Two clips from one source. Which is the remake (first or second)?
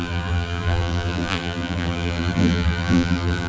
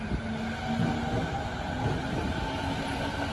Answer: first